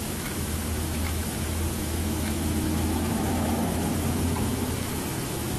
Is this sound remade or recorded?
remade